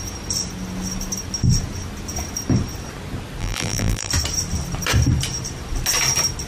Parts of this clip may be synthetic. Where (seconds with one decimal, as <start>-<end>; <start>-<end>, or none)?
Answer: 3.4-4.1

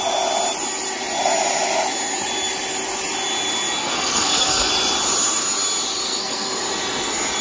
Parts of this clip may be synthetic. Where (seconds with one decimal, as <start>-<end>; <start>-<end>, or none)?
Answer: 3.8-4.7; 6.0-6.6

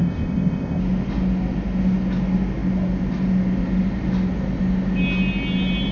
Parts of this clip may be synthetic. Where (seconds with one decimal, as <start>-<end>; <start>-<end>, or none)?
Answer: 0.0-0.8